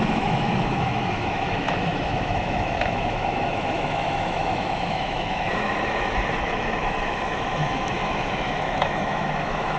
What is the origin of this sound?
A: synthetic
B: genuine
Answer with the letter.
A